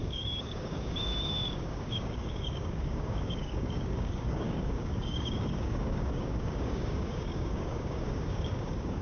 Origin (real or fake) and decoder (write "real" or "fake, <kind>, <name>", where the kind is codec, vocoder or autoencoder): fake, codec, DAC